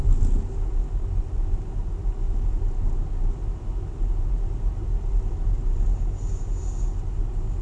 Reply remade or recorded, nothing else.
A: recorded